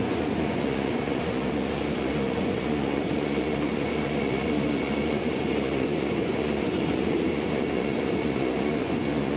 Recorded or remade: remade